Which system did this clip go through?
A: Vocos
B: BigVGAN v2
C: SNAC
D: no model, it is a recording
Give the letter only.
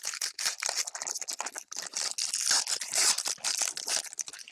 D